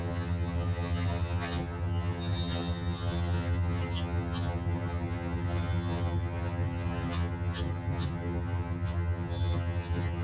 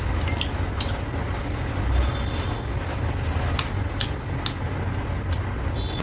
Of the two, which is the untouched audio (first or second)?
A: second